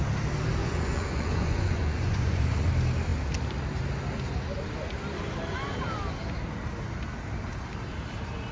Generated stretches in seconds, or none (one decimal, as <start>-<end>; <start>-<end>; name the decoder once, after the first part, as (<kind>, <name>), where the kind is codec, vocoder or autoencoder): 0.6-2.7 (vocoder, Vocos)